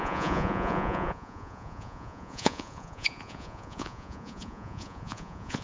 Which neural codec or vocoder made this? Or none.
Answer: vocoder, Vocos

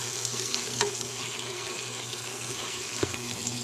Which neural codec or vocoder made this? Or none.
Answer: codec, SNAC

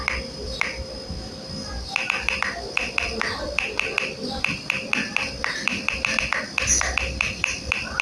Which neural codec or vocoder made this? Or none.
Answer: vocoder, BigVGAN v2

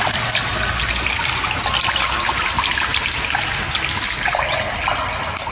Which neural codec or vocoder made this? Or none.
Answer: none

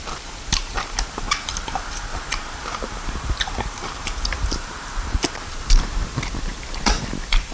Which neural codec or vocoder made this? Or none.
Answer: vocoder, BigVGAN v2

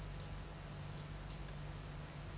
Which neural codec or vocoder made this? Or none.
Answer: none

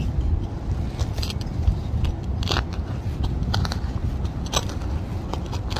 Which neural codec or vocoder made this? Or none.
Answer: none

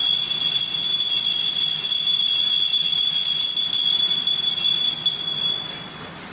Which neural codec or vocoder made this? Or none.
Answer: none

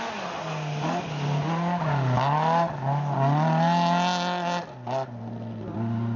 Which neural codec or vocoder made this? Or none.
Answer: none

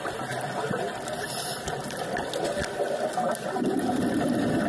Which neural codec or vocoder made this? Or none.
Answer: none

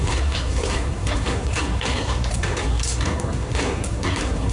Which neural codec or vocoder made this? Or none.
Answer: codec, SNAC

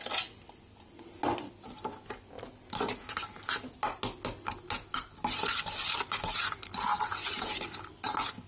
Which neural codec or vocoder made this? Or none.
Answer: none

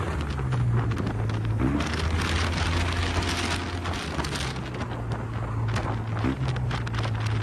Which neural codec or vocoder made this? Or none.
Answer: none